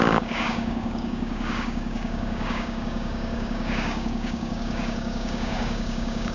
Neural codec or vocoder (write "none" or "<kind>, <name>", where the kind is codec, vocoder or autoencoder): codec, DAC